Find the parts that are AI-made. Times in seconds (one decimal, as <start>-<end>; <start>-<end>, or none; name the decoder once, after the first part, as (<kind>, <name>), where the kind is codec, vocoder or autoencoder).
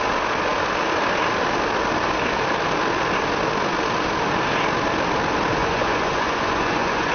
5.6-7.1 (vocoder, Vocos)